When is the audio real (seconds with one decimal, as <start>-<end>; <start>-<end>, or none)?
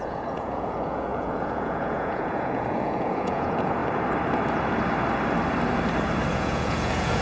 3.8-6.3